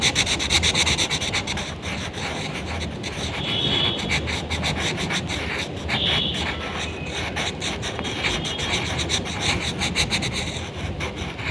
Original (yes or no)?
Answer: yes